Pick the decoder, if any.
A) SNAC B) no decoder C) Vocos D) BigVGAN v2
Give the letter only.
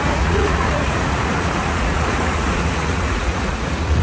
C